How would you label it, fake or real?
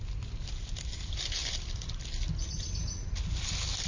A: real